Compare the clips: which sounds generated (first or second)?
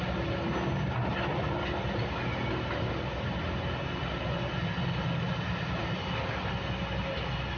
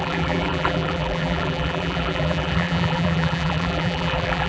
second